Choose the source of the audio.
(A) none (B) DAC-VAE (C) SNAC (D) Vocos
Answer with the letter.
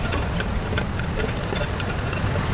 A